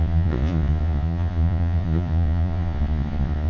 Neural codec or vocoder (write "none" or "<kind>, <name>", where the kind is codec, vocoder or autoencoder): vocoder, Vocos